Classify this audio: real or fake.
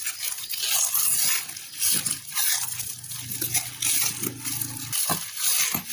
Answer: real